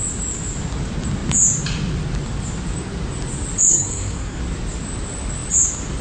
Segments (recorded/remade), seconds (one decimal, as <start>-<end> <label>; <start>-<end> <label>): 0.0-3.7 recorded; 3.7-4.4 remade; 4.4-6.0 recorded